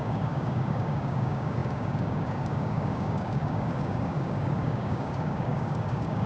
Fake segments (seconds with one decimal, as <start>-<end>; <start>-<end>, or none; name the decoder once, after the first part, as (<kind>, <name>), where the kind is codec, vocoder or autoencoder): 0.0-6.3 (codec, DAC)